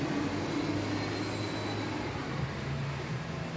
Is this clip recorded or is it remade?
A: recorded